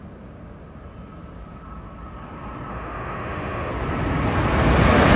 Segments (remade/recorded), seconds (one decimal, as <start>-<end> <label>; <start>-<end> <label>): 0.0-2.7 recorded; 2.7-3.7 remade; 3.7-5.2 recorded